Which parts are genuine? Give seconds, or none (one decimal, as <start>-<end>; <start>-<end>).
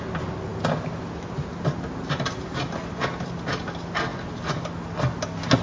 0.0-5.6